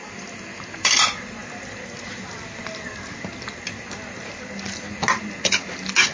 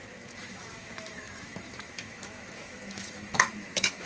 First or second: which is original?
first